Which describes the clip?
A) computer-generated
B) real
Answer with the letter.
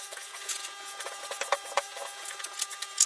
A